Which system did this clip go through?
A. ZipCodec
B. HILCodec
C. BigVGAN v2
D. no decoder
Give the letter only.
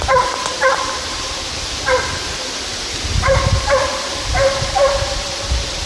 C